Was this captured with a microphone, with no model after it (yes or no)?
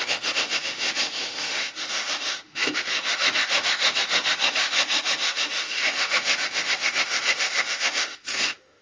no